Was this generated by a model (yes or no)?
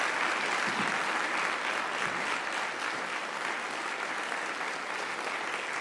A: no